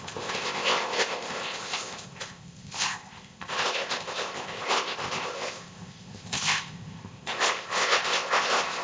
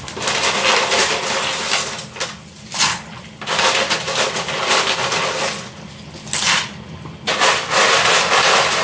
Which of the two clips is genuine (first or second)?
second